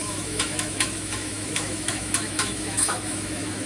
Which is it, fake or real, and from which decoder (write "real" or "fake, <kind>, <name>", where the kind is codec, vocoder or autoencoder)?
fake, autoencoder, DAC-VAE